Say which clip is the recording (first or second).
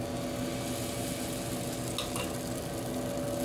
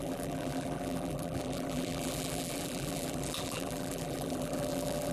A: first